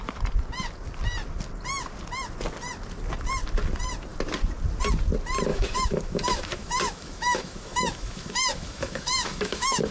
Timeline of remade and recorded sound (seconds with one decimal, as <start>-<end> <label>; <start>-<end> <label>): 0.0-5.5 recorded; 5.5-9.9 remade